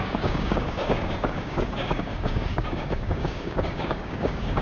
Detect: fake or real fake